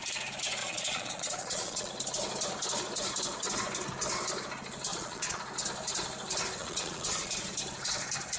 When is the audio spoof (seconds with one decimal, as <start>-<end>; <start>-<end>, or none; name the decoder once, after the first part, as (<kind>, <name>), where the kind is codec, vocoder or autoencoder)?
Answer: 0.6-1.9 (vocoder, Vocos); 4.9-5.4; 6.6-7.3